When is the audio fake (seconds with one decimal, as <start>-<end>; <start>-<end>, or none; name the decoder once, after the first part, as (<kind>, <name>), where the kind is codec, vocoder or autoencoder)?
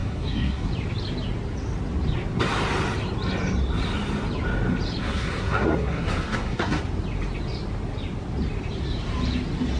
0.0-0.7 (codec, SNAC); 5.0-6.8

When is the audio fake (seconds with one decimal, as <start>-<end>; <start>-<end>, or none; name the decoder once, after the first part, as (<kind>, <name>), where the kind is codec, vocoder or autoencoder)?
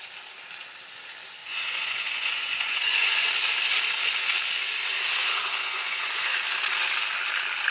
1.4-3.3 (vocoder, Vocos); 5.2-6.3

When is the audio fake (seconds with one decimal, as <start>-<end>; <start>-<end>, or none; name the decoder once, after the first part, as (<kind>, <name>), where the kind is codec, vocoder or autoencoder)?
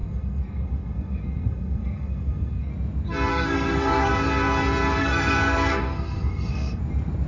0.0-2.7 (codec, SNAC); 3.3-4.1; 5.0-6.8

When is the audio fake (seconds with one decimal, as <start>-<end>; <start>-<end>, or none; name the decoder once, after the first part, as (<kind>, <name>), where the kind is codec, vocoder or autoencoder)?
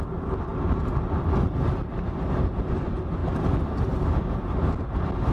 none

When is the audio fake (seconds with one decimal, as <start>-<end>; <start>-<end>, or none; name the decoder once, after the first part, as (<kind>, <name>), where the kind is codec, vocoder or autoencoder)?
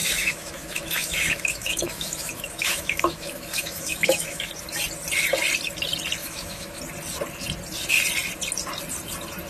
0.0-4.5 (autoencoder, DAC-VAE); 6.2-6.8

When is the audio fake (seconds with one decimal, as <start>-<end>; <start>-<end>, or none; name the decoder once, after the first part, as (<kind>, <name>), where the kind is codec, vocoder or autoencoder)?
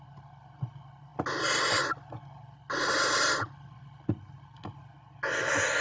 none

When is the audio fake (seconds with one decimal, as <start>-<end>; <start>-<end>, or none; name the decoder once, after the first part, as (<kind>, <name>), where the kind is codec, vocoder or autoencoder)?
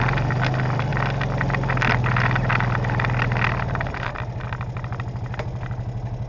none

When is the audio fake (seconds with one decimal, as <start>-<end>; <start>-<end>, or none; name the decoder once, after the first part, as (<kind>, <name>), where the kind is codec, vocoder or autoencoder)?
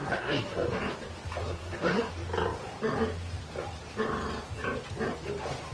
0.0-0.8 (codec, SNAC); 1.4-2.1